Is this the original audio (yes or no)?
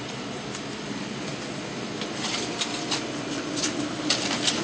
yes